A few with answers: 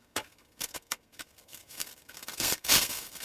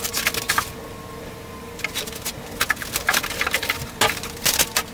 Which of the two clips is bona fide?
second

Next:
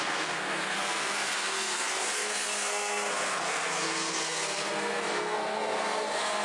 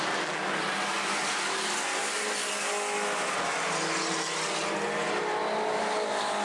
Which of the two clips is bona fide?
second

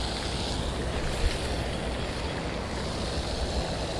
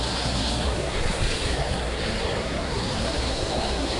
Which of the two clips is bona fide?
first